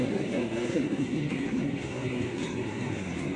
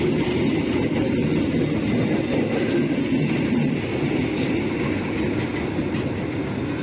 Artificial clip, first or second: first